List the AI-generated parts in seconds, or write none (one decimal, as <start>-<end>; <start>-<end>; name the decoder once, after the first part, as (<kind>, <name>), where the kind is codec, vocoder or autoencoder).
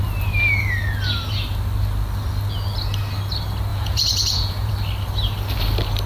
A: 3.7-4.7 (vocoder, Vocos)